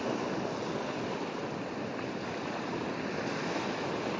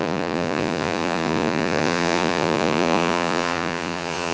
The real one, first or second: first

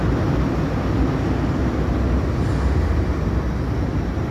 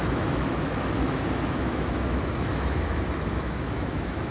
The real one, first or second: first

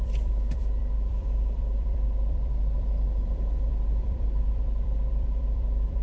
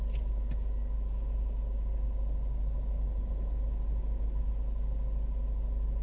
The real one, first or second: second